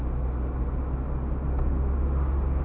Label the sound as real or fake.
real